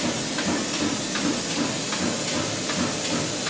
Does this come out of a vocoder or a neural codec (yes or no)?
no